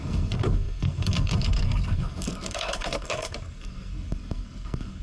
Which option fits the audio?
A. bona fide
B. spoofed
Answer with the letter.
B